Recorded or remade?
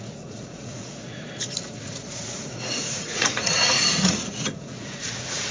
remade